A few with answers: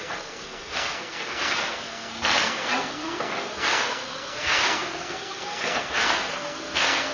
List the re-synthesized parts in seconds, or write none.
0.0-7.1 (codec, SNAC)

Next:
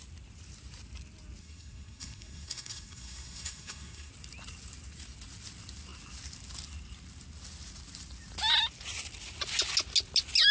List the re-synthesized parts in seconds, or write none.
1.4-4.1 (codec, SNAC)